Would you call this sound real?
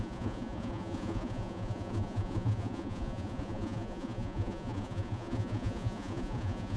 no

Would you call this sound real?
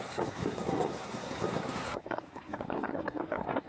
no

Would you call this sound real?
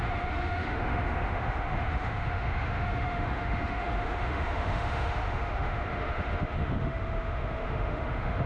no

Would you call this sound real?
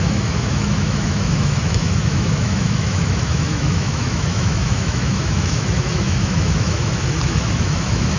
no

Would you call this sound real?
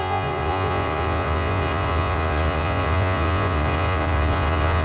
no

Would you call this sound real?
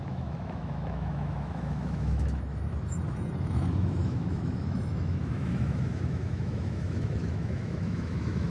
no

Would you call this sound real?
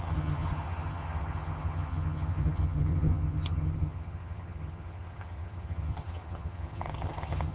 no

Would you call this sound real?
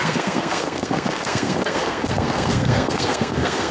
no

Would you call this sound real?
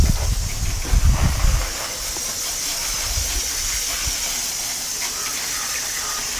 yes